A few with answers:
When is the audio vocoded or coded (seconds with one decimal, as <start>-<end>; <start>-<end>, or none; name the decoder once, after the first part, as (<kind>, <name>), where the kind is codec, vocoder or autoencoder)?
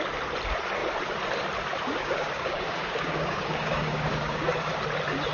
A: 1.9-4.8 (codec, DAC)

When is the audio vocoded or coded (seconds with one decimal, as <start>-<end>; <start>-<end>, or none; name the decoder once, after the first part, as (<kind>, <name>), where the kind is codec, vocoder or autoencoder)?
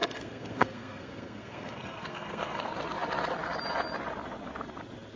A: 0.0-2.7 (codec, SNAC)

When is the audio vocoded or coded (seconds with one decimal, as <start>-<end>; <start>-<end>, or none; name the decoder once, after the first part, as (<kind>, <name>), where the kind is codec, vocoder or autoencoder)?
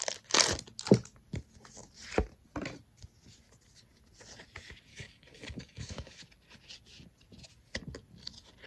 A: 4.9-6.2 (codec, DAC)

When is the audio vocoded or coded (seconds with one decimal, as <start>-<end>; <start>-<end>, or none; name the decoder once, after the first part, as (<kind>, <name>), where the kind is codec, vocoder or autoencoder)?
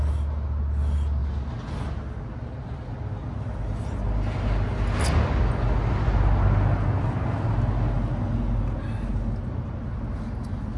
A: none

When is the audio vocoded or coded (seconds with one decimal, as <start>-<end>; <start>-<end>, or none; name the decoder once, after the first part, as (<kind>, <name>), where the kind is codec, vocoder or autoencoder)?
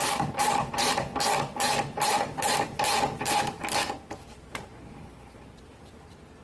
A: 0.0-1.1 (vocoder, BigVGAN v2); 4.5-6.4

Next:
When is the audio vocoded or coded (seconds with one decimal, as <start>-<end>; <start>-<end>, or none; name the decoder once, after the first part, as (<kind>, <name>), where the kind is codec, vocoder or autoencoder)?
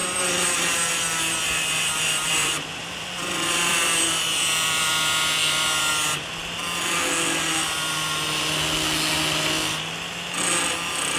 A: 0.0-4.9 (vocoder, BigVGAN v2); 5.4-5.9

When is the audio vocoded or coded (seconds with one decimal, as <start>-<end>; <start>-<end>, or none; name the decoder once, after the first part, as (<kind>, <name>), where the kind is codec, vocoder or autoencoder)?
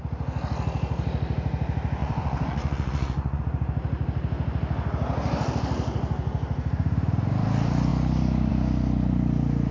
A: 2.0-3.4 (vocoder, Vocos)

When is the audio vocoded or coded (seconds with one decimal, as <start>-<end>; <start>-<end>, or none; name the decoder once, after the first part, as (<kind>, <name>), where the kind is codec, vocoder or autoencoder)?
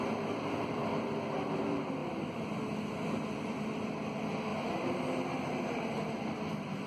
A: 0.0-0.8 (vocoder, BigVGAN v2); 1.5-2.0; 3.3-4.5; 5.7-6.9